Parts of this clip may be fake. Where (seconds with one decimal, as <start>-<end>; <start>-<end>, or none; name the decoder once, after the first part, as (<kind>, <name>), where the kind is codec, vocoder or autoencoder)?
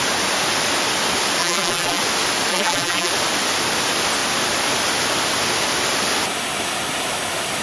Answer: 1.4-2.0 (vocoder, BigVGAN v2); 2.5-3.1